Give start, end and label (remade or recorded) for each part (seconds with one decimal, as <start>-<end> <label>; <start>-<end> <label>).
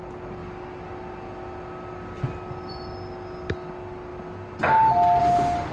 0.0-5.7 recorded